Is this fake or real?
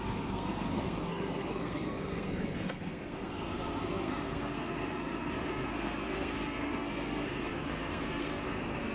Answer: fake